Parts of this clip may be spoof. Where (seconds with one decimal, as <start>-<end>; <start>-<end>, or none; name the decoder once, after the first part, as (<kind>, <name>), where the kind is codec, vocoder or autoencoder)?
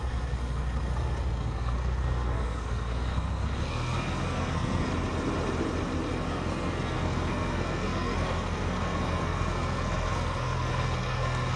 0.0-4.9 (codec, SNAC); 6.1-11.6